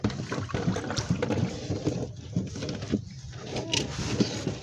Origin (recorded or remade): recorded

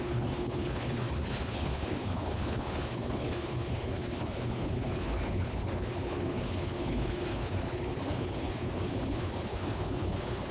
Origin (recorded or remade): remade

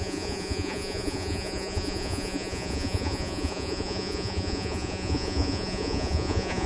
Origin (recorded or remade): remade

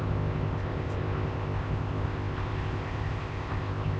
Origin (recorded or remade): remade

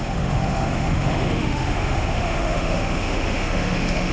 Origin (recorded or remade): remade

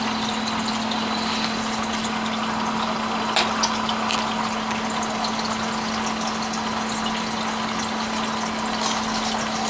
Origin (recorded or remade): recorded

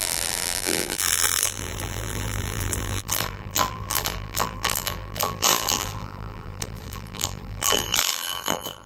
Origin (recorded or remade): remade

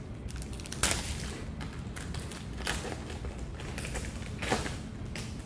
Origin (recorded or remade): recorded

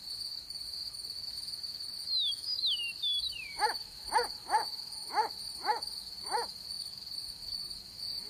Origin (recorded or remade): remade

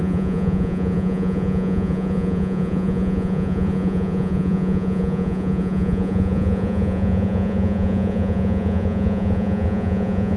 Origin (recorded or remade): remade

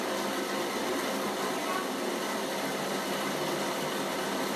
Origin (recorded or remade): recorded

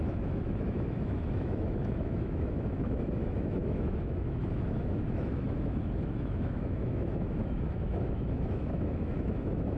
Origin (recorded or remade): remade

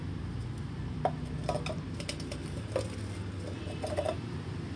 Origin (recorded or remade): recorded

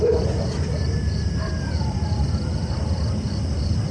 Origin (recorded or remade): remade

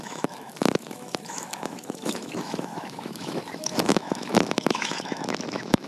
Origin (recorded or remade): remade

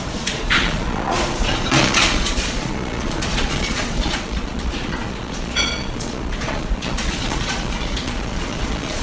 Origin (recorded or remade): remade